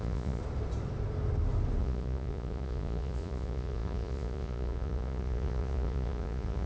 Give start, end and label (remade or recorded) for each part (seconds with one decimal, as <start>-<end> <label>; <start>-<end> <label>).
0.0-0.4 remade; 0.4-1.8 recorded; 1.8-6.7 remade